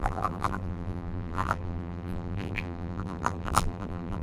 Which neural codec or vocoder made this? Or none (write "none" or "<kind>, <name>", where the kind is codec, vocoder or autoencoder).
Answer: vocoder, BigVGAN v2